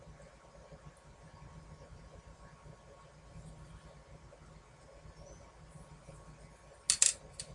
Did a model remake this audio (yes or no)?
no